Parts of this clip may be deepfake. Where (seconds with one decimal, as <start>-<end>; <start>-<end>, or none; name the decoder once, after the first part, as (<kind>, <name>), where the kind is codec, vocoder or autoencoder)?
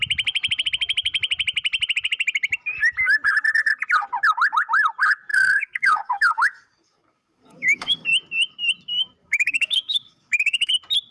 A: 5.3-8.1 (codec, DAC); 9.2-10.7